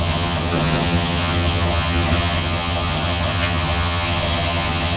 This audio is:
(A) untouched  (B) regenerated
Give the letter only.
B